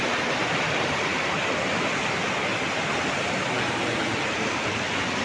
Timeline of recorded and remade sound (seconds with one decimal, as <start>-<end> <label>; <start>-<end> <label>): 0.0-5.2 recorded